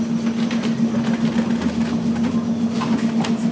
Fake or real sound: real